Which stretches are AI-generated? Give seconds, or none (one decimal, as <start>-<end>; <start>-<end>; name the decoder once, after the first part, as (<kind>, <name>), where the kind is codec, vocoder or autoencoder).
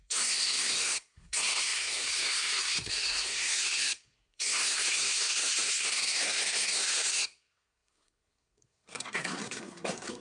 0.0-10.2 (codec, SNAC)